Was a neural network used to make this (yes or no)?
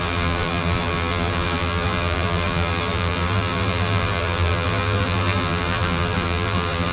yes